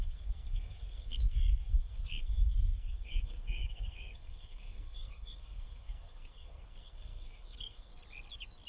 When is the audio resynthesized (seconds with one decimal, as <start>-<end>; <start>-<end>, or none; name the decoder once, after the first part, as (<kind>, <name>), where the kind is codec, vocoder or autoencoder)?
0.0-7.9 (codec, SNAC)